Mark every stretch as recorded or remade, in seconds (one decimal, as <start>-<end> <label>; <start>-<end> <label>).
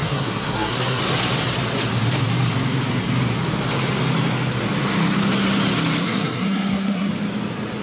0.0-1.0 remade; 1.0-6.0 recorded; 6.0-7.1 remade; 7.1-7.8 recorded